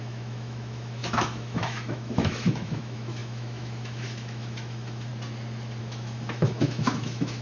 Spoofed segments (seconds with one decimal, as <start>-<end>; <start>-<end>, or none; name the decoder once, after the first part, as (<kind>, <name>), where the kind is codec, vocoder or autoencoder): 0.0-5.1 (autoencoder, DAC-VAE); 5.8-7.4